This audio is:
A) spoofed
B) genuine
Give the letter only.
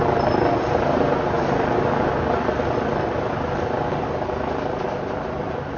B